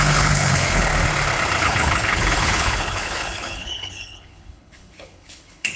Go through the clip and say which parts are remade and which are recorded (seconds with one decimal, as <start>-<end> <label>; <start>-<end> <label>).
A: 0.0-0.9 remade; 0.9-1.6 recorded; 1.6-5.8 remade